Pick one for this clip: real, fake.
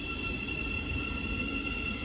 real